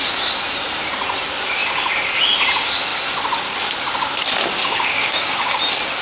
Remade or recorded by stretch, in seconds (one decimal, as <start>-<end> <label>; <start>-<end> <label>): 0.0-4.6 recorded; 4.6-5.6 remade; 5.6-6.0 recorded